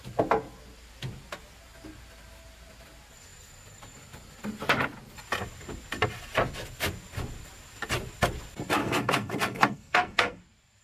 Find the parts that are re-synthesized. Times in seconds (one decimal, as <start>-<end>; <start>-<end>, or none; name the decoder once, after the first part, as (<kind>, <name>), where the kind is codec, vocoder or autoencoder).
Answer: 8.8-10.4 (codec, SNAC)